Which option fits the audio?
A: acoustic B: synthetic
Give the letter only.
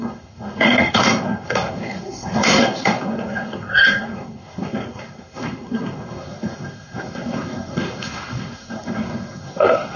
B